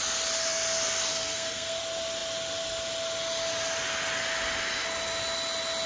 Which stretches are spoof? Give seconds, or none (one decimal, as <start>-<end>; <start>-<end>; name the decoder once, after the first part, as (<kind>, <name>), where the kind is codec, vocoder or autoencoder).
1.1-1.8 (codec, SNAC)